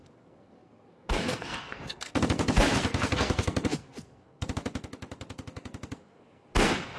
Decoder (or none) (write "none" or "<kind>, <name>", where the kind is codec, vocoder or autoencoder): codec, SNAC